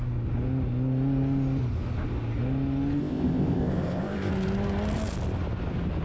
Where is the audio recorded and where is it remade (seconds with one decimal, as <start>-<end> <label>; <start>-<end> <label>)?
0.0-3.0 recorded; 3.0-4.3 remade; 4.3-6.0 recorded